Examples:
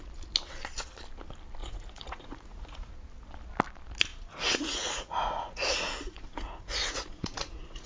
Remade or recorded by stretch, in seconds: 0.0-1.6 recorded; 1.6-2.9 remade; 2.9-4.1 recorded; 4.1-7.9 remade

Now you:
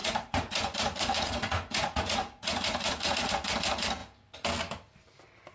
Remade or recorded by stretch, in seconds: 0.0-3.3 remade; 3.3-5.5 recorded

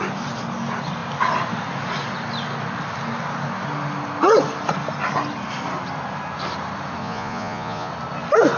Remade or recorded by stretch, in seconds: 0.0-7.0 recorded; 7.0-7.9 remade; 7.9-8.6 recorded

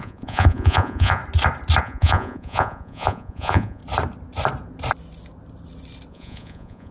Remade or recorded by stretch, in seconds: 0.0-1.2 remade; 1.2-1.8 recorded; 1.8-3.8 remade; 3.8-6.1 recorded; 6.1-6.9 remade

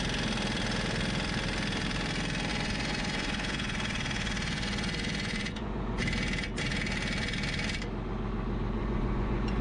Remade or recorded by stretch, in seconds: 0.0-2.5 recorded; 2.5-6.0 remade; 6.0-8.8 recorded; 8.8-9.6 remade